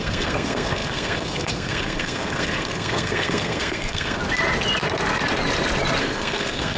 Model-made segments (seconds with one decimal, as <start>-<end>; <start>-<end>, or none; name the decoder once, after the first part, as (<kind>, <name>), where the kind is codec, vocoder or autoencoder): 0.0-4.2 (codec, SNAC); 6.0-6.8